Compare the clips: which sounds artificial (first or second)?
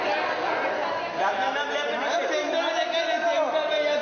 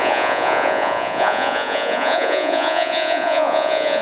second